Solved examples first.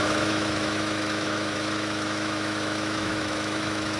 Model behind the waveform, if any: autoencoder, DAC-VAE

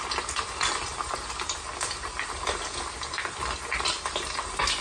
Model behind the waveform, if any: none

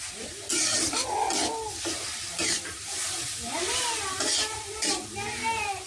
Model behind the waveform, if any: none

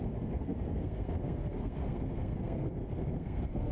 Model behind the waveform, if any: codec, SNAC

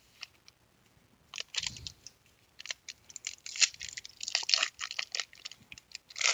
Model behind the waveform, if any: none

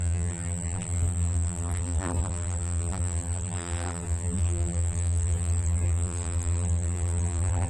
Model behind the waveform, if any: vocoder, BigVGAN v2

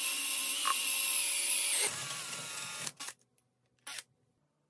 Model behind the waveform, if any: none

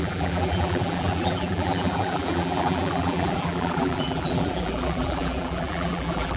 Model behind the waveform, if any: vocoder, BigVGAN v2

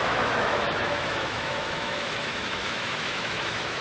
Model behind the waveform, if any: autoencoder, DAC-VAE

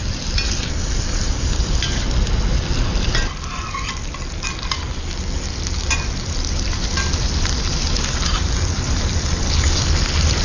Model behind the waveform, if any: none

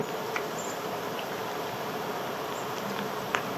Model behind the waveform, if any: vocoder, BigVGAN v2